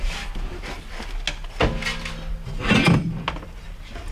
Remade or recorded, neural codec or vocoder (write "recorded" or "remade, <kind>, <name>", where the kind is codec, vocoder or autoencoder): recorded